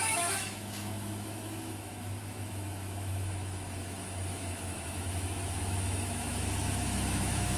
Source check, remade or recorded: remade